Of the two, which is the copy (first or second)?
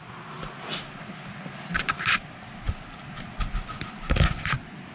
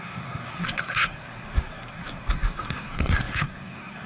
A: second